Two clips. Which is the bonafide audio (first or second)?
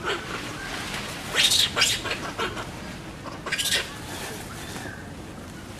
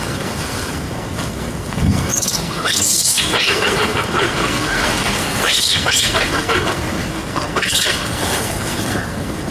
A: first